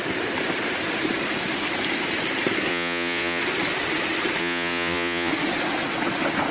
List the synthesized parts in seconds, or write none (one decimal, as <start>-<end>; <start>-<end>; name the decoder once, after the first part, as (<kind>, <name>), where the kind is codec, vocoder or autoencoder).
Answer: 2.7-3.4 (vocoder, Vocos); 4.4-5.3